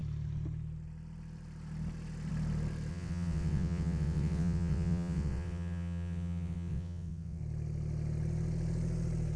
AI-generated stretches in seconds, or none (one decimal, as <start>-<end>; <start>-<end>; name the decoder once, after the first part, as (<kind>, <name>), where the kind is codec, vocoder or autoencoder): 2.9-7.4 (vocoder, WaveNeXt)